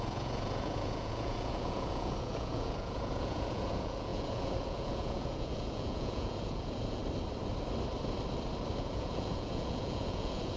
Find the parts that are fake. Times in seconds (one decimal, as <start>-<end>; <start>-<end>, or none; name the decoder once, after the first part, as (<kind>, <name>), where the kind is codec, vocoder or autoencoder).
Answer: 0.0-7.0 (vocoder, Vocos); 8.7-10.6